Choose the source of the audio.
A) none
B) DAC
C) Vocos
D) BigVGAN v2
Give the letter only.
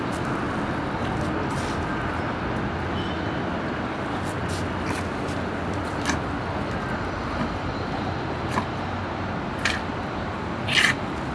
A